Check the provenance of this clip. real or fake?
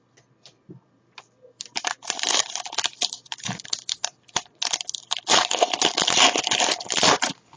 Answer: real